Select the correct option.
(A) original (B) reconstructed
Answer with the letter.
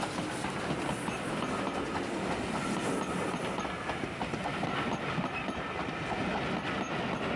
A